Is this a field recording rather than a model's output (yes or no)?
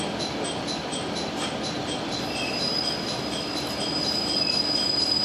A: yes